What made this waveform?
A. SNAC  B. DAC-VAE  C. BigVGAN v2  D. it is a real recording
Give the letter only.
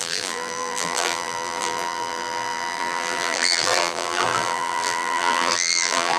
C